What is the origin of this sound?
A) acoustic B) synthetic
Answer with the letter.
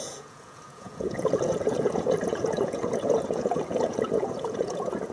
B